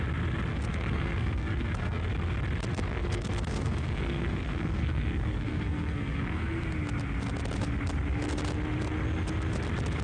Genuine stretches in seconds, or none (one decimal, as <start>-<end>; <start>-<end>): 0.0-0.5; 2.1-2.7; 6.6-10.0